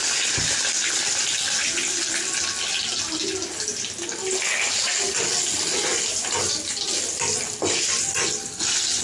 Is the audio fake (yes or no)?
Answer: no